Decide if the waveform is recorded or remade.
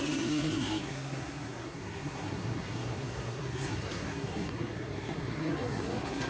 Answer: remade